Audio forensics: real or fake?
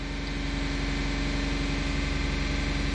real